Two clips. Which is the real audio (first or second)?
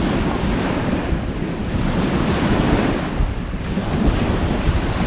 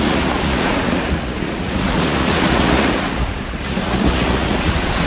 first